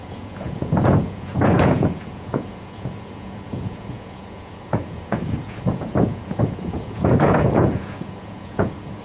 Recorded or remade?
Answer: remade